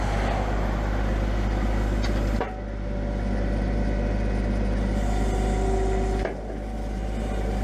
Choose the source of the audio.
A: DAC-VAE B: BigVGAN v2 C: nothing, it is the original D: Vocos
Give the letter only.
C